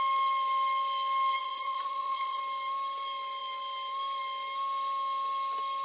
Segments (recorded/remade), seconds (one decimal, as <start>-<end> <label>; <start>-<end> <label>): 0.0-1.4 recorded; 1.4-2.4 remade; 2.4-5.8 recorded